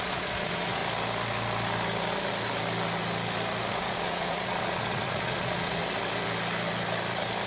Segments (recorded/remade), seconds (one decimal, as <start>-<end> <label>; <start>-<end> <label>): 0.0-0.8 remade; 0.8-3.7 recorded; 3.7-5.8 remade; 5.8-7.5 recorded